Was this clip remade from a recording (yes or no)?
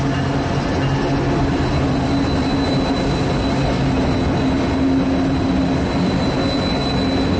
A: no